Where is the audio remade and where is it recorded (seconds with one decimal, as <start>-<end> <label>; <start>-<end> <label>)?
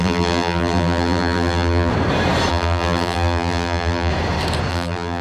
0.0-1.9 remade; 1.9-2.5 recorded; 2.5-4.1 remade; 4.1-4.7 recorded; 4.7-5.2 remade